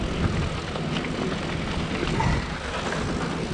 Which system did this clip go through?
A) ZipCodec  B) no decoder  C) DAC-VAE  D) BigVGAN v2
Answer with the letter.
B